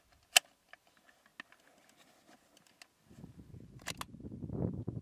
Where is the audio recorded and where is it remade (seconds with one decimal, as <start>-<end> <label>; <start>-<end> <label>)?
0.0-5.0 recorded